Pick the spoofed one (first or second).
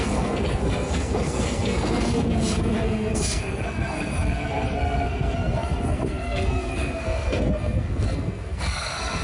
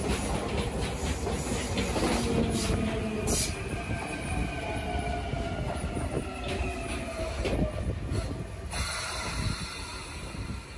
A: first